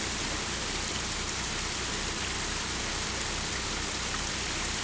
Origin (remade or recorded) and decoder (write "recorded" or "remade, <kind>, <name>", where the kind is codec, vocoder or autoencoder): recorded